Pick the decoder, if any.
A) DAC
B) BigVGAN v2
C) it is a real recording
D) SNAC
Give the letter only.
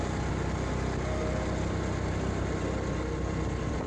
C